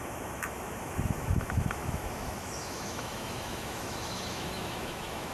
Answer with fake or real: fake